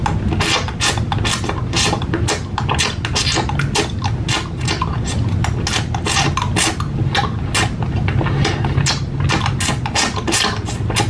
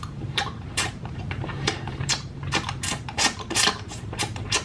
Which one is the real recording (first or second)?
first